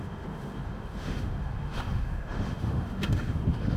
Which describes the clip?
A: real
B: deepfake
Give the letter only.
B